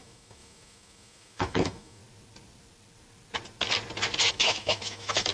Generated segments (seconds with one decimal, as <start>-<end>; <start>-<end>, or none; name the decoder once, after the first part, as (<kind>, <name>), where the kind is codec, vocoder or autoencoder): 0.0-2.0 (autoencoder, DAC-VAE); 4.3-5.3

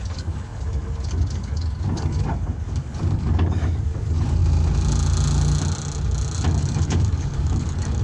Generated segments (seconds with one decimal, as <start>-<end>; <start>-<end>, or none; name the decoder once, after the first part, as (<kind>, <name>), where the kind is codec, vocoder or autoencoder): 0.0-4.4 (codec, DAC); 6.6-8.0

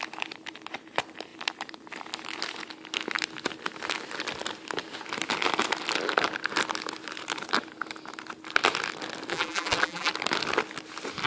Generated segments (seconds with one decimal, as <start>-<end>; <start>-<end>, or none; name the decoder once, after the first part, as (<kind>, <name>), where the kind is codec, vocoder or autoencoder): 9.3-10.1 (vocoder, BigVGAN v2)

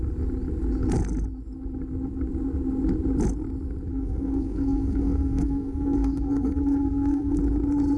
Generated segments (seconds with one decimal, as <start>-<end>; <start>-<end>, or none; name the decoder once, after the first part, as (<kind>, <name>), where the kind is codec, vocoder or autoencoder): 3.9-7.4 (codec, SNAC)

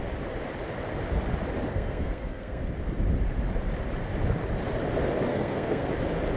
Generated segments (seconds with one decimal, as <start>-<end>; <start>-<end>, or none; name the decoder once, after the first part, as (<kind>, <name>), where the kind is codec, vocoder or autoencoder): 1.7-2.6 (codec, SNAC); 5.3-5.9